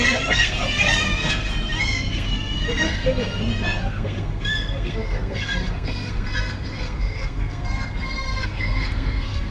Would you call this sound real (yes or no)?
no